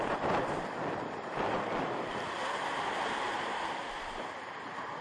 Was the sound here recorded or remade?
recorded